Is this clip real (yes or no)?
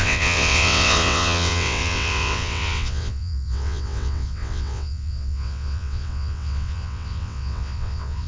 no